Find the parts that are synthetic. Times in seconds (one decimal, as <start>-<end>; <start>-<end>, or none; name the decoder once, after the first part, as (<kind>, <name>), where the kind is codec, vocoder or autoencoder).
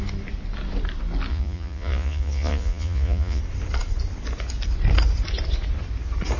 1.3-3.4 (vocoder, Vocos)